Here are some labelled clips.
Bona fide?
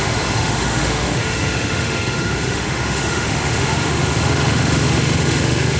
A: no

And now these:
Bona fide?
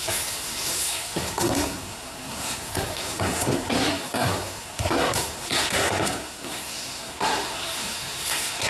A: no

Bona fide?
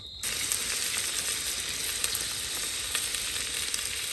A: yes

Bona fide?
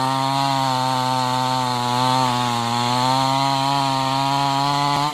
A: yes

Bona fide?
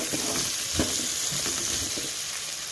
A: yes